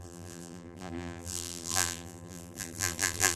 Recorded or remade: remade